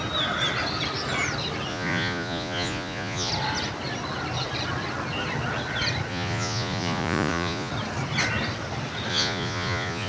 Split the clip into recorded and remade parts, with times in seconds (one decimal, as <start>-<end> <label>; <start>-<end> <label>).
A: 0.0-1.7 recorded; 1.7-3.3 remade; 3.3-6.1 recorded; 6.1-7.7 remade; 7.7-9.1 recorded; 9.1-10.1 remade